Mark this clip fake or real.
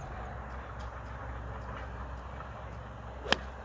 real